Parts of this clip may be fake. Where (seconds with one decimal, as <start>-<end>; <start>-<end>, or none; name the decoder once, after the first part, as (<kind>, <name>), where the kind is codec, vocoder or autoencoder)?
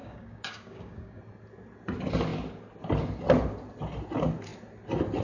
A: 0.0-1.2 (codec, DAC)